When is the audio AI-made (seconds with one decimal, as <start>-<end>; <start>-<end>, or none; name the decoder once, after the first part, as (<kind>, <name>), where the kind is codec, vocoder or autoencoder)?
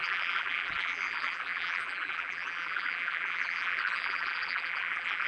0.0-5.3 (vocoder, BigVGAN v2)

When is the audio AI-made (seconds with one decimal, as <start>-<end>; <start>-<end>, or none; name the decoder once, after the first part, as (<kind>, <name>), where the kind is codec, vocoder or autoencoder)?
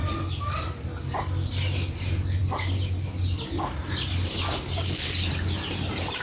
none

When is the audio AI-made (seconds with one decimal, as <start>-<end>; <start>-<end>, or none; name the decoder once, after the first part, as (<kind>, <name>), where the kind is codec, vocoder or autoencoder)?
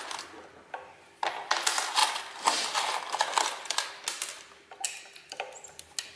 2.0-3.2 (vocoder, BigVGAN v2)